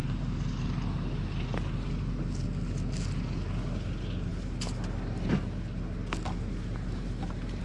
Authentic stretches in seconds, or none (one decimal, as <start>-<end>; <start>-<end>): 0.0-7.6